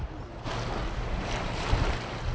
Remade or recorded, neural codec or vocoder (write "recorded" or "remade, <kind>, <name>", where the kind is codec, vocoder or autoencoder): recorded